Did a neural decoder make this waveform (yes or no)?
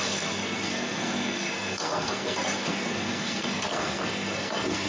yes